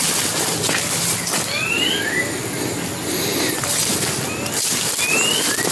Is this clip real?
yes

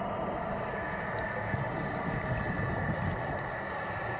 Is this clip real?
yes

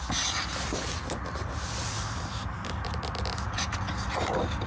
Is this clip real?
yes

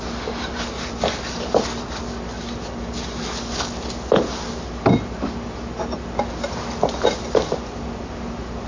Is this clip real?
yes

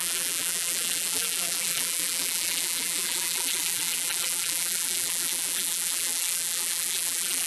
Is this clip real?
no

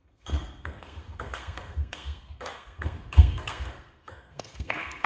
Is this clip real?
no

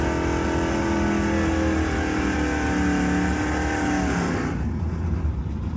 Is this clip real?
yes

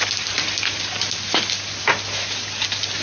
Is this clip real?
yes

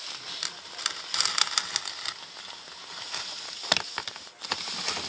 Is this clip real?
yes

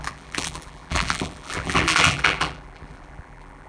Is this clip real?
no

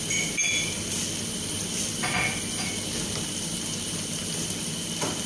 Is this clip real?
yes